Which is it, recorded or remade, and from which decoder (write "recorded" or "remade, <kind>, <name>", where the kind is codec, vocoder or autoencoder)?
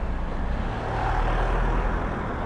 recorded